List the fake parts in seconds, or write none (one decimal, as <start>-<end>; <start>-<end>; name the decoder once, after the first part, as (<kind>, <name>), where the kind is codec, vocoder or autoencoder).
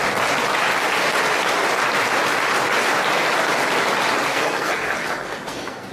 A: 4.3-5.9 (codec, SNAC)